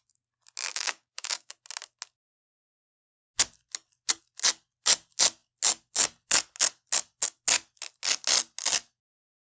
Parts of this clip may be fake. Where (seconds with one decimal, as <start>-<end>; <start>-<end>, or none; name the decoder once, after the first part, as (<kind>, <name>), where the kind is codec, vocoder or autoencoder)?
0.7-1.5 (codec, DAC)